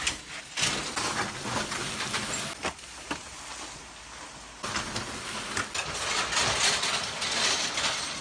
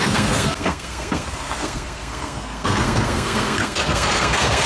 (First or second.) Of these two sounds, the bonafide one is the first